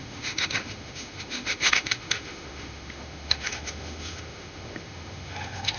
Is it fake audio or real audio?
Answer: fake